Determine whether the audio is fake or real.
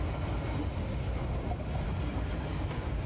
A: real